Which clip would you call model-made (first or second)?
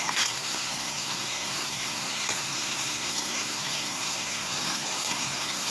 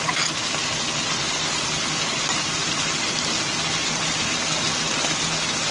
first